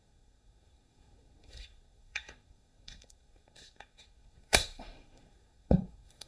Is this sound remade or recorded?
remade